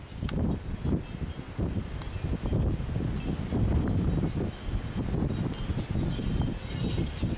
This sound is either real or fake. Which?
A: real